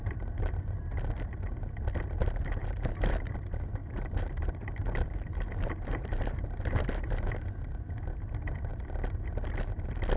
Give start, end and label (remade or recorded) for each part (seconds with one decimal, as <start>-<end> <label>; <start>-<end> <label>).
0.0-2.6 recorded; 2.6-3.3 remade; 3.3-3.8 recorded; 3.8-7.3 remade; 7.3-10.2 recorded